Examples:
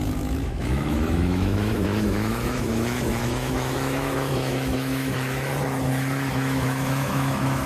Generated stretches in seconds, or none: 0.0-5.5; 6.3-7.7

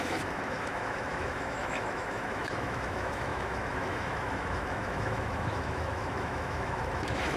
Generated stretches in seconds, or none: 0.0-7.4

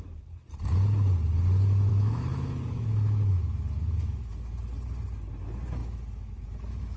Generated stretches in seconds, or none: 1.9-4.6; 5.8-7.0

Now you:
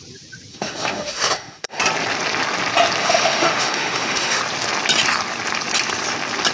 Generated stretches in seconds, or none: 0.5-1.8; 3.0-4.4

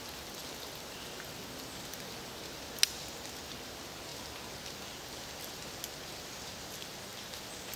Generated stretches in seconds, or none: none

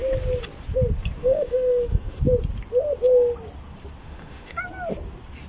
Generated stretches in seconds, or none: 1.2-2.2; 4.0-4.6

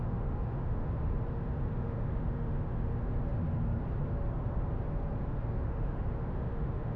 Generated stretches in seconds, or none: 0.0-1.1; 1.8-2.9; 5.2-7.0